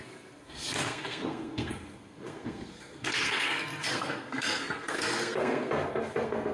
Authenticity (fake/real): fake